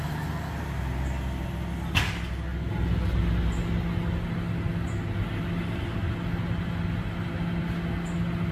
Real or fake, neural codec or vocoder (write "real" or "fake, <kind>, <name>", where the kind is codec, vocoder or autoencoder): real